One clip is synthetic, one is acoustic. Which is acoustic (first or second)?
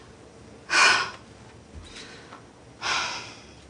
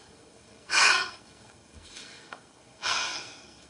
first